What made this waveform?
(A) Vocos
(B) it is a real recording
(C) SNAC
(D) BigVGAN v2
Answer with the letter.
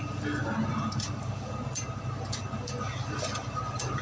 B